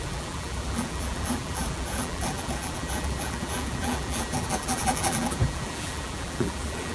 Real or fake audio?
fake